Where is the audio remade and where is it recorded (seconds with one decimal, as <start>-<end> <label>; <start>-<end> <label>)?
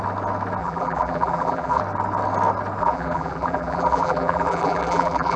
0.0-0.6 recorded; 0.6-1.8 remade; 1.8-2.8 recorded; 2.8-5.4 remade